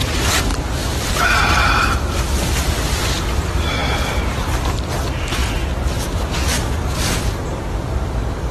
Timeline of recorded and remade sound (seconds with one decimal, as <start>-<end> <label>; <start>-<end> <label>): 0.0-0.5 remade; 0.5-2.1 recorded; 2.1-5.4 remade; 5.4-7.0 recorded; 7.0-8.5 remade